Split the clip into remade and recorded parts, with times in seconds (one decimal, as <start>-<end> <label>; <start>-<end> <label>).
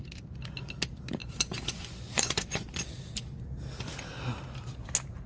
0.0-1.2 recorded; 1.2-2.7 remade; 2.7-5.3 recorded